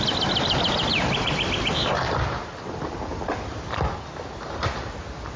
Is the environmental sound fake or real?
real